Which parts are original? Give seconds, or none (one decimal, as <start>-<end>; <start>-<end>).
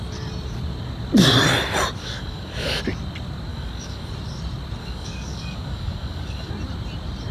0.0-2.0; 2.8-3.5; 4.1-4.8; 6.5-7.3